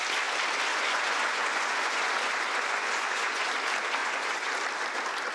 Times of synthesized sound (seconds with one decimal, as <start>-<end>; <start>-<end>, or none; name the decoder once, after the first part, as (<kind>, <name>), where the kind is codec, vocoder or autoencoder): 0.7-3.5 (vocoder, Vocos); 4.0-4.5